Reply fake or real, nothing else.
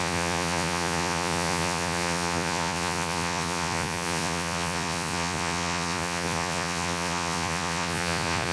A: fake